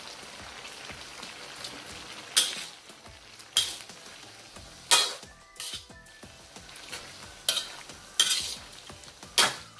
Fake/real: real